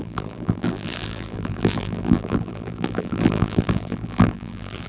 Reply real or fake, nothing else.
fake